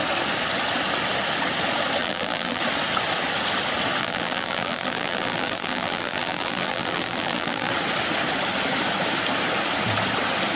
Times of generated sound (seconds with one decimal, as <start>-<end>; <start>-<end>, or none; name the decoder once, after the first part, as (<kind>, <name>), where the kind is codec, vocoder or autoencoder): 2.0-2.6 (vocoder, BigVGAN v2); 4.0-7.7